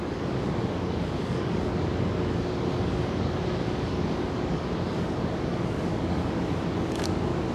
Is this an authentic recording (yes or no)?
no